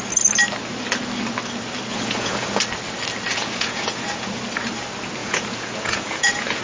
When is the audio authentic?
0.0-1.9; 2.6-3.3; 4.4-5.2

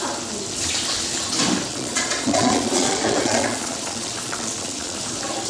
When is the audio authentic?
0.0-1.7; 5.0-5.5

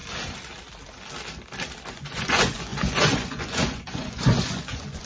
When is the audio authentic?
0.0-1.9

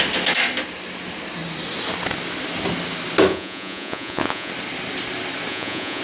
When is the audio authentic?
0.0-3.3; 4.5-5.5

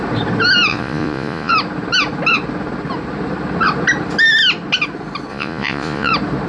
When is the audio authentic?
0.0-0.7; 1.5-5.3; 6.1-6.5